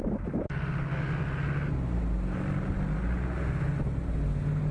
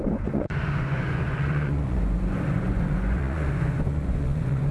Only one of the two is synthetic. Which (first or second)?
second